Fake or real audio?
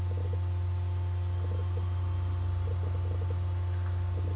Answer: real